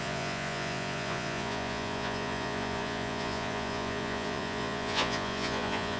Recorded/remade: remade